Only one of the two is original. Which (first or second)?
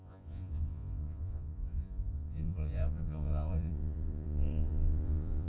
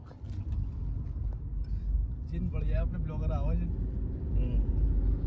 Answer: second